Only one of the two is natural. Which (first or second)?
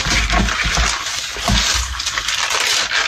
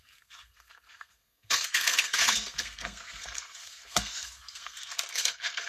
first